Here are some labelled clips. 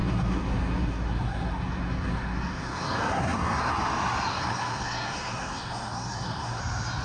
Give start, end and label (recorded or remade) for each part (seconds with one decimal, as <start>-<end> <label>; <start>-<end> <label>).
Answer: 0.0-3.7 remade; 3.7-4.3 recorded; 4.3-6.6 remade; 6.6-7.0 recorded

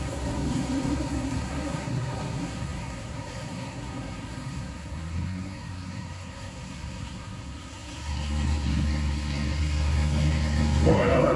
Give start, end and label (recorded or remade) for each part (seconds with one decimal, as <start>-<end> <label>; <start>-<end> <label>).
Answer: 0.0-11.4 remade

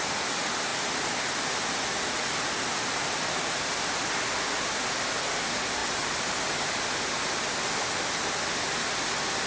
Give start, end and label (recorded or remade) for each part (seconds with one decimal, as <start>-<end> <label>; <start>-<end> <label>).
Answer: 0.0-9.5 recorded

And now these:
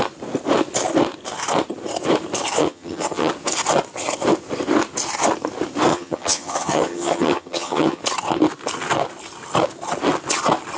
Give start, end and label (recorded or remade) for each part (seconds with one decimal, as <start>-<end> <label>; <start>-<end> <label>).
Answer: 0.0-2.6 recorded; 2.6-3.3 remade; 3.3-5.9 recorded; 5.9-8.0 remade; 8.0-10.8 recorded

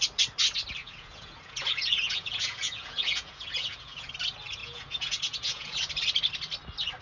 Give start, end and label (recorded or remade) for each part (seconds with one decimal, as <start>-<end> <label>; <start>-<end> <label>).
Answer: 0.0-0.8 recorded; 0.8-4.1 remade; 4.1-4.6 recorded; 4.6-5.9 remade; 5.9-7.0 recorded

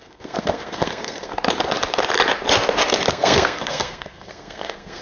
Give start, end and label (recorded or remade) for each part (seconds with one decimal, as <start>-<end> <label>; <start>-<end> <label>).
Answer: 0.0-1.3 remade; 1.3-3.1 recorded; 3.1-5.0 remade

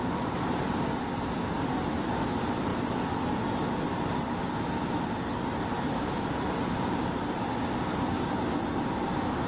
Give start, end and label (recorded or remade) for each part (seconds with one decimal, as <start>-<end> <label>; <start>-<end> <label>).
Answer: 0.0-9.5 recorded

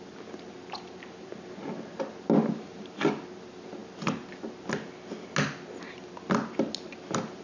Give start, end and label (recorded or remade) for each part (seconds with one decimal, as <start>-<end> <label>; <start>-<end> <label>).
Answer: 0.0-7.4 recorded